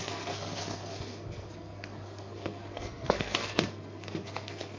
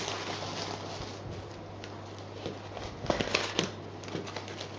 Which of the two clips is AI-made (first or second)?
first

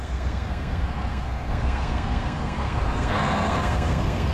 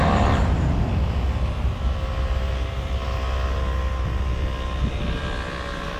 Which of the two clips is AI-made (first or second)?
first